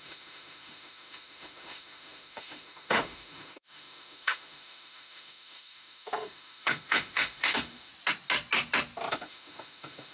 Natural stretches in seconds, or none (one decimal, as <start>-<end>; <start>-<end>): 7.9-9.1